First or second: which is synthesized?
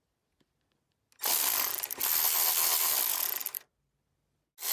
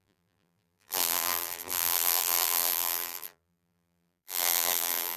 second